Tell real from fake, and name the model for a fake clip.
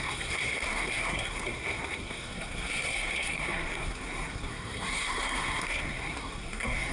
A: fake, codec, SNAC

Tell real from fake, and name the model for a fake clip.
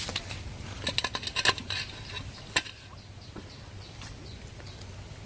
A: real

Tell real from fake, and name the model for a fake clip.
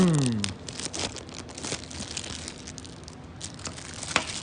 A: real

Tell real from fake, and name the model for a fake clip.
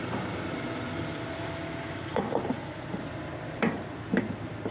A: fake, vocoder, BigVGAN v2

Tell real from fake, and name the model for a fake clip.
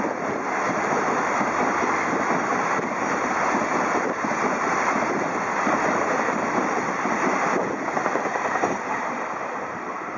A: real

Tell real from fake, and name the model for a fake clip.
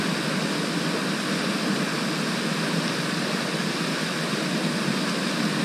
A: real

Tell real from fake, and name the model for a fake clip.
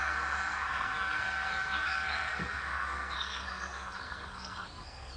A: fake, codec, SNAC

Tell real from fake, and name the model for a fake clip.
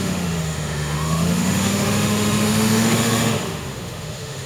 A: fake, autoencoder, DAC-VAE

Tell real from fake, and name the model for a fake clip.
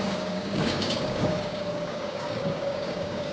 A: fake, codec, DAC